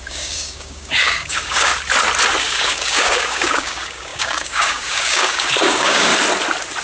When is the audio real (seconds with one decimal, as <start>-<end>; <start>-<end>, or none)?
1.7-2.4; 6.1-6.8